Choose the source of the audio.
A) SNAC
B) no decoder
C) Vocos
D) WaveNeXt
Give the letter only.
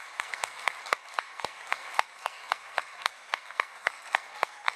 A